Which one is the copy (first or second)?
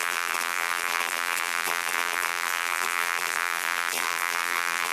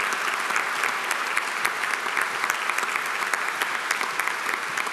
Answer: first